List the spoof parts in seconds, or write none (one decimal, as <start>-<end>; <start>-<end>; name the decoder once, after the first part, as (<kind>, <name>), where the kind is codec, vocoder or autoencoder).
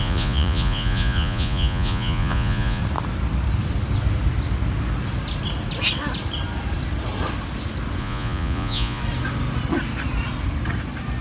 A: 0.0-2.8 (vocoder, Vocos); 8.0-9.0